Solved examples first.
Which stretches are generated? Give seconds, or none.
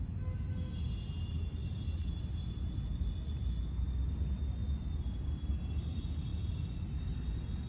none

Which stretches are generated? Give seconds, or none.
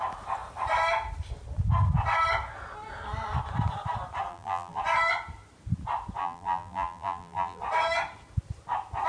4.3-4.8 (vocoder, BigVGAN v2); 6.2-7.6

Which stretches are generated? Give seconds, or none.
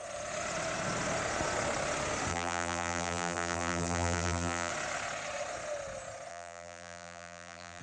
2.3-4.7 (vocoder, BigVGAN v2); 6.3-7.8